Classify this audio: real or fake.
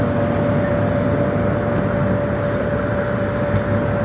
fake